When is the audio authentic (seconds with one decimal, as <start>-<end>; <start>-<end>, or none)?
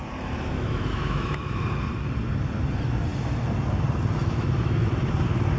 0.0-0.5; 1.6-4.2; 4.9-5.6